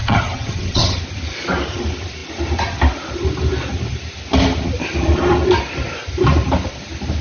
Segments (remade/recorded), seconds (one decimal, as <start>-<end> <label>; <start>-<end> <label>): 0.0-1.0 remade; 1.0-7.2 recorded